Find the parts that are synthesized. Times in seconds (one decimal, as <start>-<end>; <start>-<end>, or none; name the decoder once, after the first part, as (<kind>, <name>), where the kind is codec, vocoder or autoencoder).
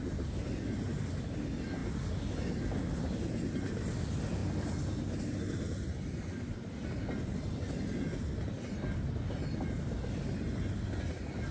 none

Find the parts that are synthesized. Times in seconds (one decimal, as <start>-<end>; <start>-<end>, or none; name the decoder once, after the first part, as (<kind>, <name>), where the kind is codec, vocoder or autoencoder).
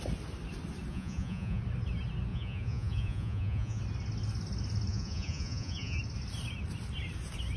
0.9-1.6 (vocoder, Vocos); 2.3-3.8; 4.9-6.0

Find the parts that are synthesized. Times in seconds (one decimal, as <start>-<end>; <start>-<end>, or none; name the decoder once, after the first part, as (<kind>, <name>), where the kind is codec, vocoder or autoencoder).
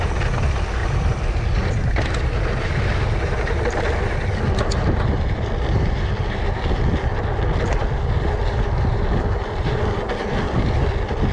0.8-2.7 (vocoder, BigVGAN v2); 7.8-8.4